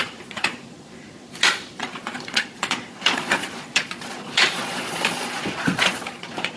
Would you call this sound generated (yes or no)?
yes